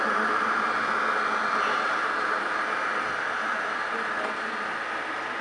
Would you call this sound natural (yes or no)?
yes